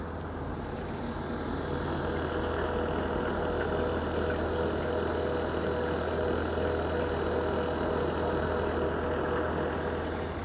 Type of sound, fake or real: real